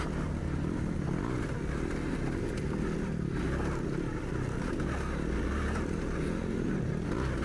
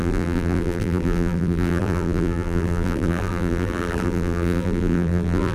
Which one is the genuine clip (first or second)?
first